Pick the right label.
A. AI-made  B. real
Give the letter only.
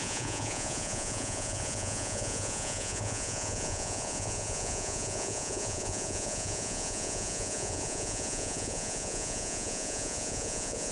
A